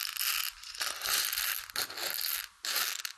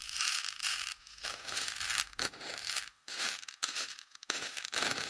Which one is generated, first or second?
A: second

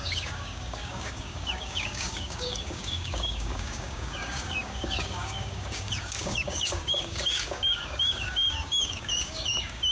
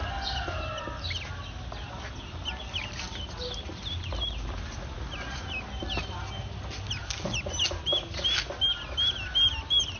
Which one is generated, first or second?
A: first